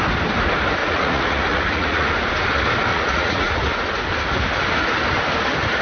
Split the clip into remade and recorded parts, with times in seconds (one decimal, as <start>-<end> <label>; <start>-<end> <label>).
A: 0.0-0.8 recorded; 0.8-2.1 remade; 2.1-2.9 recorded; 2.9-3.5 remade; 3.5-5.8 recorded